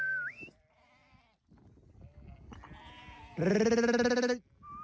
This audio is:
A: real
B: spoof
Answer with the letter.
A